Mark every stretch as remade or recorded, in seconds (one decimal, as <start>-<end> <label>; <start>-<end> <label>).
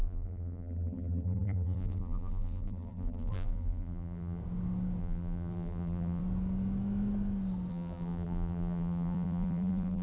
0.0-4.4 remade; 4.4-5.0 recorded; 5.0-6.2 remade; 6.2-7.7 recorded; 7.7-10.0 remade